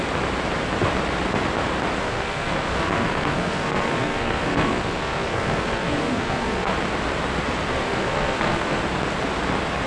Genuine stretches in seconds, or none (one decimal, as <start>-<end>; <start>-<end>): 0.0-2.0; 6.7-7.7; 8.8-9.9